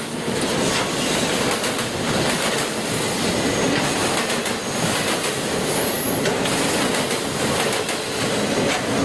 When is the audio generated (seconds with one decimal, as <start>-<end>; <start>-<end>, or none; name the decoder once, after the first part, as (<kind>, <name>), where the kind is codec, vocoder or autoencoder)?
none